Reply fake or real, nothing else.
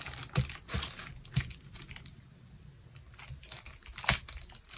real